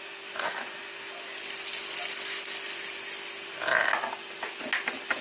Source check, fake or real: real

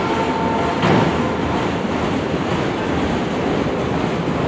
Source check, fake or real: real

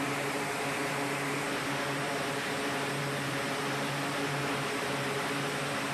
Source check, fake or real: real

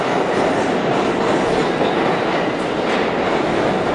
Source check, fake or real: real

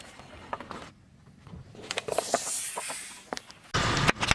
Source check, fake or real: real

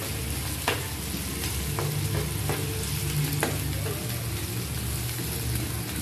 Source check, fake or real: real